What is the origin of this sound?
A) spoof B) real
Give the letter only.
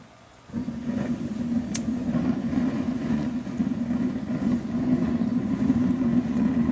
A